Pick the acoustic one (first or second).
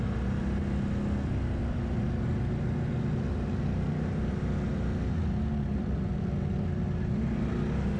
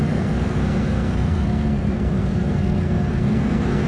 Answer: first